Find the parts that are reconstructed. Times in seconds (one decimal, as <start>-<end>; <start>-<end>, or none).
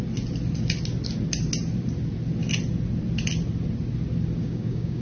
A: 4.4-5.0